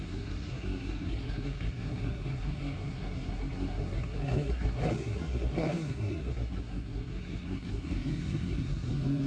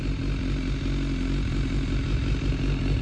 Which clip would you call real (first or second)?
second